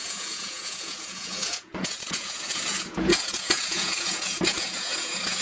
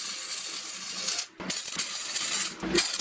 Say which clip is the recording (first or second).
second